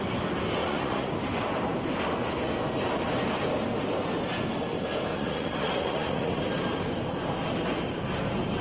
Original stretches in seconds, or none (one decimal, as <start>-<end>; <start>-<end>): 0.0-0.6; 1.1-5.1; 6.4-8.6